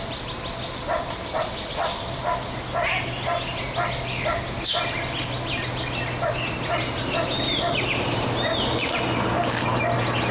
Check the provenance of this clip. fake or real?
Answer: real